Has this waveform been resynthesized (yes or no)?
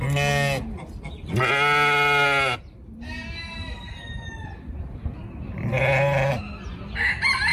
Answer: no